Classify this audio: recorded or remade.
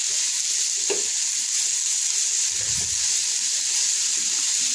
recorded